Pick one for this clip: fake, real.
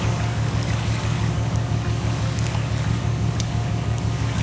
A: fake